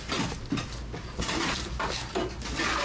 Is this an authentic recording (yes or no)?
yes